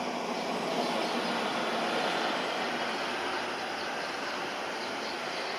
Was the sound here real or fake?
real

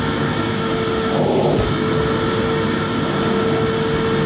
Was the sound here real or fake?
real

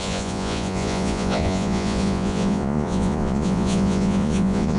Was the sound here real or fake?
fake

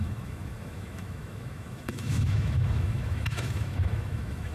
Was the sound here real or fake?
fake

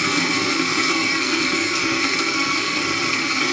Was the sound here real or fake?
fake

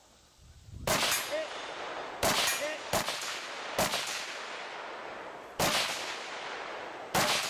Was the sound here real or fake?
real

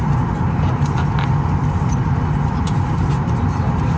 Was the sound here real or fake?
real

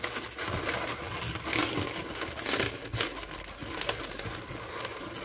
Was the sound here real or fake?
real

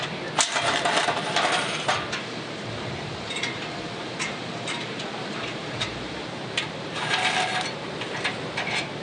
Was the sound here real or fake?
fake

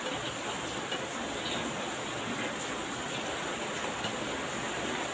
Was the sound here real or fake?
real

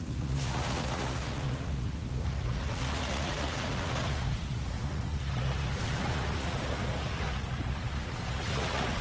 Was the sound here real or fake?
fake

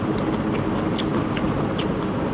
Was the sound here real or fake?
real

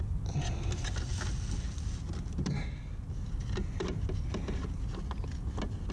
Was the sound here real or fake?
real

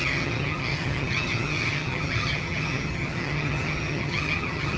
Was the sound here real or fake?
fake